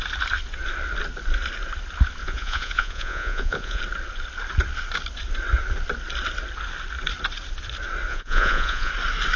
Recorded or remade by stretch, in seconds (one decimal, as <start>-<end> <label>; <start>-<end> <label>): 0.0-2.2 recorded; 2.2-3.8 remade; 3.8-8.1 recorded; 8.1-8.9 remade; 8.9-9.4 recorded